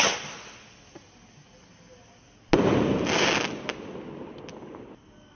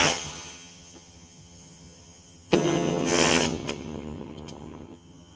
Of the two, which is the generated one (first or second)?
second